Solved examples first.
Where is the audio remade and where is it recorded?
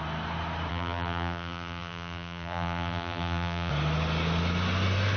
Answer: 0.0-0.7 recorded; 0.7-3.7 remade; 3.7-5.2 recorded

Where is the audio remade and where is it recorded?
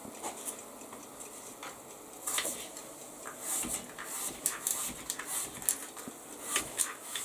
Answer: 0.0-4.3 recorded; 4.3-4.7 remade; 4.7-6.6 recorded; 6.6-7.2 remade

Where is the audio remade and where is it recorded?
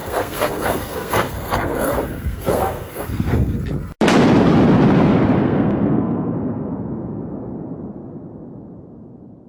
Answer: 0.0-3.6 remade; 3.6-5.4 recorded; 5.4-7.2 remade; 7.2-9.5 recorded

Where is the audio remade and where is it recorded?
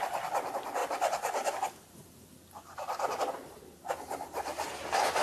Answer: 0.0-5.2 recorded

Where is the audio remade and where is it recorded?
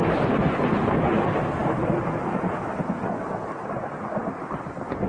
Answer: 0.0-5.1 recorded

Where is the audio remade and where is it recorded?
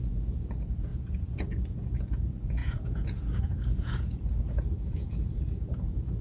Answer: 0.0-6.2 remade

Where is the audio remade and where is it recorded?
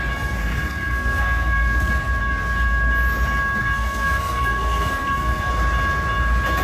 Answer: 0.0-0.4 recorded; 0.4-1.9 remade; 1.9-3.6 recorded; 3.6-5.5 remade; 5.5-6.6 recorded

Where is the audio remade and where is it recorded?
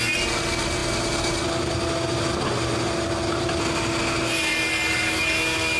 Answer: 0.0-4.5 recorded; 4.5-5.8 remade